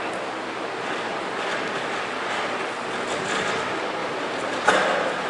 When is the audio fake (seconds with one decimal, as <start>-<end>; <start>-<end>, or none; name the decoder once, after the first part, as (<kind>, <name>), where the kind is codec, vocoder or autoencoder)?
4.0-4.7 (vocoder, BigVGAN v2)